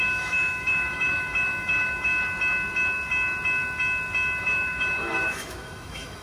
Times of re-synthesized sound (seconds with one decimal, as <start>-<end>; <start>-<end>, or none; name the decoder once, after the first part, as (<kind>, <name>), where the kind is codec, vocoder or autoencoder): 0.0-2.1 (autoencoder, DAC-VAE); 4.4-6.2